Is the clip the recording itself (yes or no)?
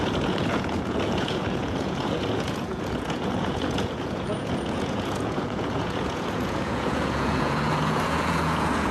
no